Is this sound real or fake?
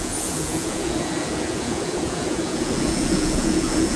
fake